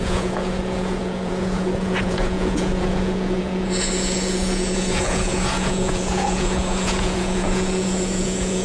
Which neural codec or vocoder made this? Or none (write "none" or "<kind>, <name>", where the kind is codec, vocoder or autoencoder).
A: vocoder, Vocos